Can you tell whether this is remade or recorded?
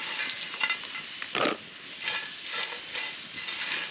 recorded